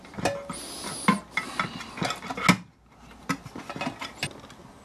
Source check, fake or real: real